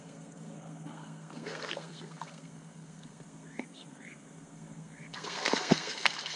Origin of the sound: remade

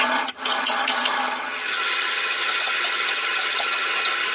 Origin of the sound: remade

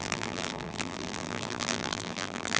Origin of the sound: remade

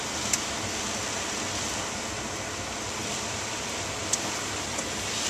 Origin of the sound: recorded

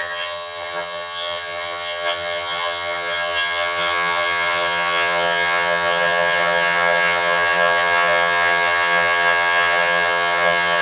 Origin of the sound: remade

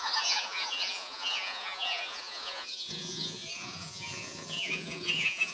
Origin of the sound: remade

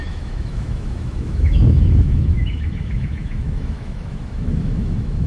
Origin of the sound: remade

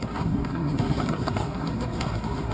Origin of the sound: remade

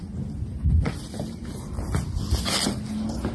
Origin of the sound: recorded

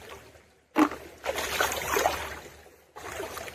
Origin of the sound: recorded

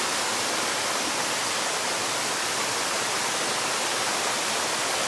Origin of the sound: recorded